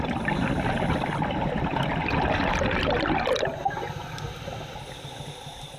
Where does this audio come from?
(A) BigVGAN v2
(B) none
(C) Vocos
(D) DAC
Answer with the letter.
B